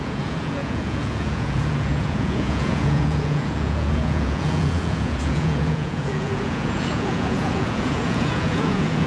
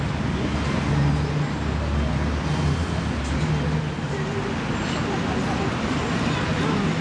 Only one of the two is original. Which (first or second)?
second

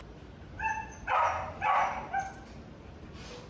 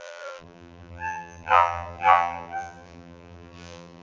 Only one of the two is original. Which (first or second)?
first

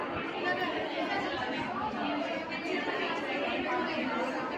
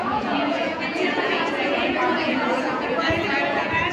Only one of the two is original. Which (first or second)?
first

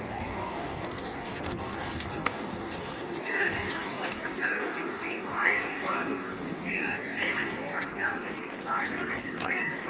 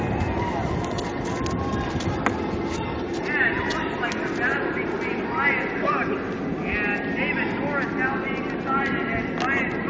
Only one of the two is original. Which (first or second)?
second